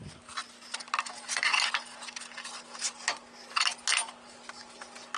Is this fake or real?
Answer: real